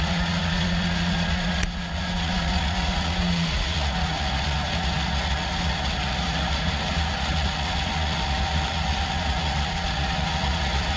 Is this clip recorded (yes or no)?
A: no